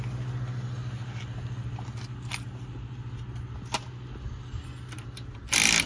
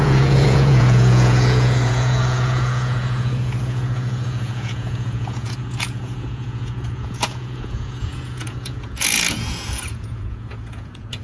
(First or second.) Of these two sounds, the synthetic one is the second